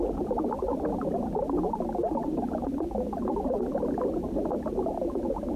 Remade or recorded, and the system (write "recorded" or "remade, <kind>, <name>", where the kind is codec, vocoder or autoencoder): remade, vocoder, BigVGAN v2